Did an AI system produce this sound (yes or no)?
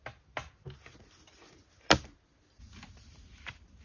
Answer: no